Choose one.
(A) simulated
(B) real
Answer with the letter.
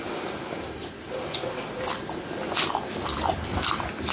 B